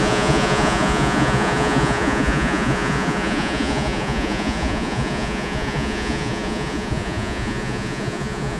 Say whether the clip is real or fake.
fake